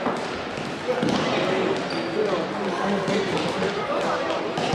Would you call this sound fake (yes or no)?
no